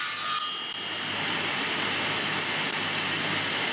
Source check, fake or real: real